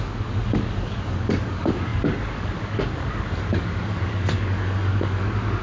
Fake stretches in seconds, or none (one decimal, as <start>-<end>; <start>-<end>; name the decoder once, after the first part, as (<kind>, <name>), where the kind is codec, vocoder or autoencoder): 0.0-5.6 (codec, DAC)